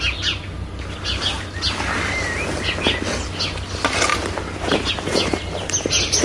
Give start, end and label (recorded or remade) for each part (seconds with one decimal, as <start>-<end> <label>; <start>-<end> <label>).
0.0-6.2 recorded